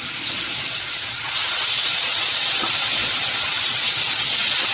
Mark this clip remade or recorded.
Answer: remade